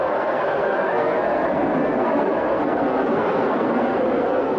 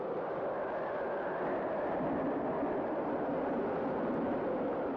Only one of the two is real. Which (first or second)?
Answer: second